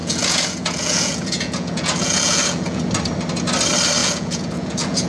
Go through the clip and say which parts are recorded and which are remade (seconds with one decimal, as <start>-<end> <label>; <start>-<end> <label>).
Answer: 0.0-2.8 remade; 2.8-4.0 recorded; 4.0-5.1 remade